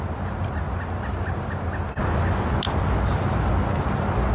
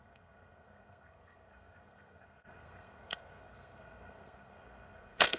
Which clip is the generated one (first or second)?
second